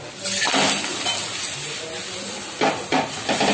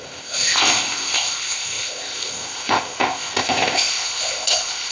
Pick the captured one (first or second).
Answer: first